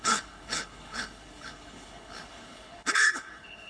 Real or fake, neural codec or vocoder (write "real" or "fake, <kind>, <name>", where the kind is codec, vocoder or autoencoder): fake, codec, HILCodec